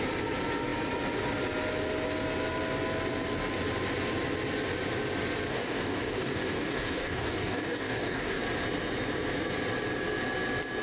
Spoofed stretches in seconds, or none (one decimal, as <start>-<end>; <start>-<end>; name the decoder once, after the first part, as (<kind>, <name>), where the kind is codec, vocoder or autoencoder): 5.5-8.4 (codec, DAC)